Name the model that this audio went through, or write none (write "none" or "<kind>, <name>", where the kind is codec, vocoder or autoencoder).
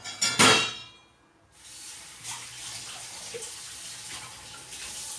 none